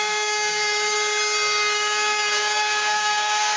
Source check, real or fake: fake